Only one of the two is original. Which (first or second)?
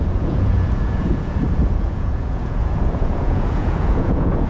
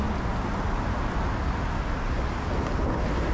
second